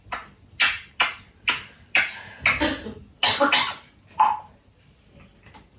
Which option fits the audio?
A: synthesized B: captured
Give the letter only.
B